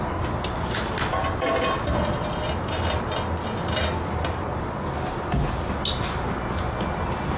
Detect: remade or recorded recorded